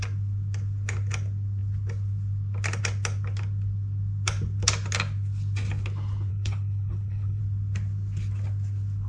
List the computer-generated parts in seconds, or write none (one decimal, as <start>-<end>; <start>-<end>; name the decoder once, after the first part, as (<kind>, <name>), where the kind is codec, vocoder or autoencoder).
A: 6.3-7.4 (codec, HILCodec)